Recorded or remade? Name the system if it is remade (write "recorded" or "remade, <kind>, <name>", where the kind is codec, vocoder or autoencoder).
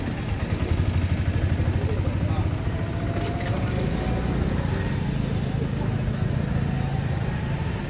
recorded